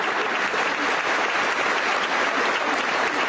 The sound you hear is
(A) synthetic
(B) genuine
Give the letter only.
B